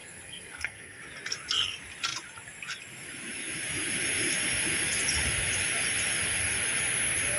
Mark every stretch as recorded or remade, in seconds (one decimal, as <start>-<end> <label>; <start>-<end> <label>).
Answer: 0.0-1.0 remade; 1.0-7.4 recorded